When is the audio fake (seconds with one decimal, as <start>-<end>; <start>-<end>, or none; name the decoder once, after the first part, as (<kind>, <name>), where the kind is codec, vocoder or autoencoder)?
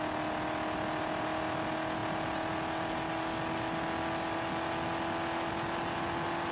none